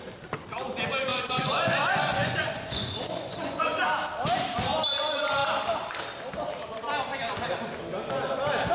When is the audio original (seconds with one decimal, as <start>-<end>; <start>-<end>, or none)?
0.0-1.1; 3.8-8.7